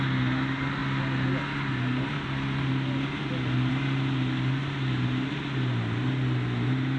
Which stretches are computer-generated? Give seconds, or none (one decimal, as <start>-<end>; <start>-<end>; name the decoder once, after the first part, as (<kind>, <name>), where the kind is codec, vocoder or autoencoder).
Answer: none